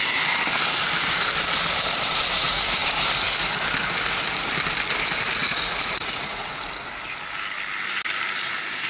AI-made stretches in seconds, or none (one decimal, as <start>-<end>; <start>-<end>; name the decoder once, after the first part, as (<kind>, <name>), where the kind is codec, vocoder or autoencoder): 5.4-6.7 (vocoder, Vocos)